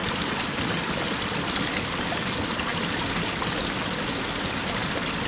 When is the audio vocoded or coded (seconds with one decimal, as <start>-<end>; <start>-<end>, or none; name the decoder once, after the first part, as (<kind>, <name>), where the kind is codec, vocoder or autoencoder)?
none